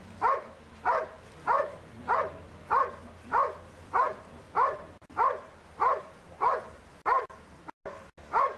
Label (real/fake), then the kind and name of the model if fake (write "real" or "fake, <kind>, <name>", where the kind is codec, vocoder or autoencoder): real